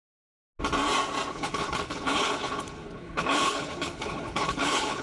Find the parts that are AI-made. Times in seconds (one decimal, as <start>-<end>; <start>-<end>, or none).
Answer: 1.3-5.0